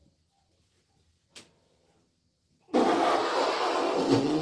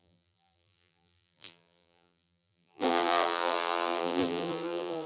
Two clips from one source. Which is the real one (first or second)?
first